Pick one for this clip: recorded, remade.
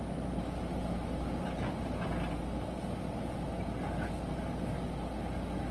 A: recorded